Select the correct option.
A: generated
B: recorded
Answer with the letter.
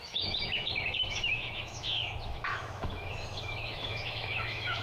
A